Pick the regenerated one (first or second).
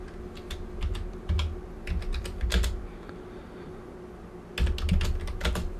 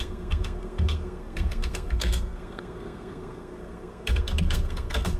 second